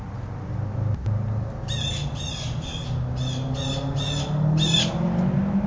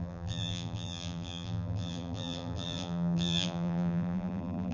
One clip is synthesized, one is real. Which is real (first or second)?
first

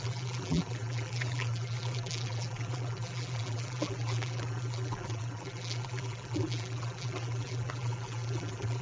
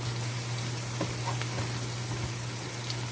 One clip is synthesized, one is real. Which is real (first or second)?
second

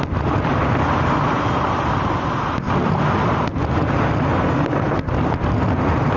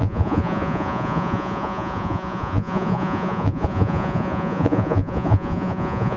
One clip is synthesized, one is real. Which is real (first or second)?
first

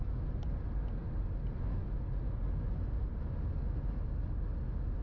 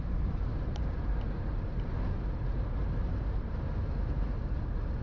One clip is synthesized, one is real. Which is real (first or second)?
first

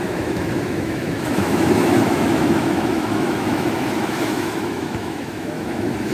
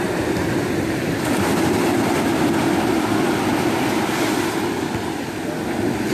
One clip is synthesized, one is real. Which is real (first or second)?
second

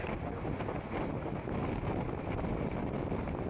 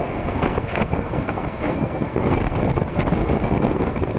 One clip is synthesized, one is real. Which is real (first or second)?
first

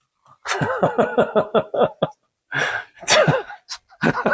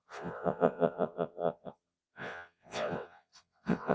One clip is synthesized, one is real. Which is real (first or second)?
first